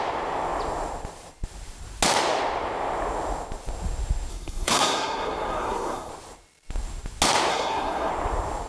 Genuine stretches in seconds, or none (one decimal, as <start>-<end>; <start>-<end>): 0.0-4.3; 6.1-7.5; 8.1-8.7